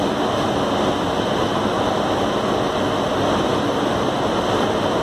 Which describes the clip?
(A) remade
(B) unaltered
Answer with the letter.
B